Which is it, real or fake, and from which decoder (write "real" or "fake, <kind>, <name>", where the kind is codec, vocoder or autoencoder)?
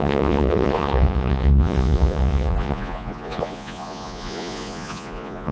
fake, vocoder, Vocos